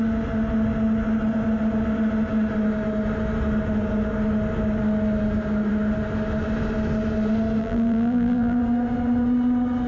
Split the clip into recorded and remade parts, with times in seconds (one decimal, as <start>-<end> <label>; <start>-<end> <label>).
0.0-7.6 recorded; 7.6-8.6 remade; 8.6-9.9 recorded